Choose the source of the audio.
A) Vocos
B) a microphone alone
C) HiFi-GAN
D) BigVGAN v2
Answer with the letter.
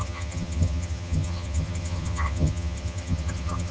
C